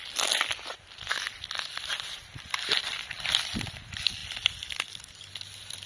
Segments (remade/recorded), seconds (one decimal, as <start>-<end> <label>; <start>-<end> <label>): 0.0-5.9 recorded